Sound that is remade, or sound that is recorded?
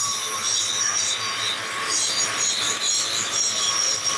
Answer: recorded